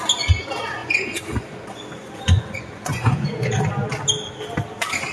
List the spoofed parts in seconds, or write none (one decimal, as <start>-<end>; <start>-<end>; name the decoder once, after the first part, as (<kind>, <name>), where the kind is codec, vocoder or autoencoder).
0.8-3.6 (vocoder, Vocos)